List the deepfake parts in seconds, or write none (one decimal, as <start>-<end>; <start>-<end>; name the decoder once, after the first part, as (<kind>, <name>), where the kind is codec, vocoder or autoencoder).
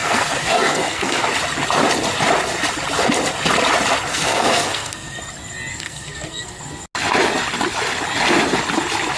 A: 0.0-1.2 (codec, SNAC); 4.1-5.2; 5.7-6.6